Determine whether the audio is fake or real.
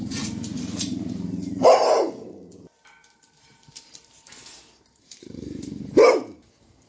fake